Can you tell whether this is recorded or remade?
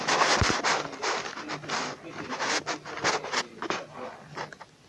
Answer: recorded